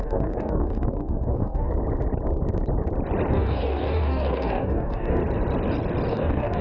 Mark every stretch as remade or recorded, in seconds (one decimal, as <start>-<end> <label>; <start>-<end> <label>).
0.0-1.7 remade; 1.7-3.3 recorded; 3.3-5.2 remade; 5.2-6.1 recorded; 6.1-6.6 remade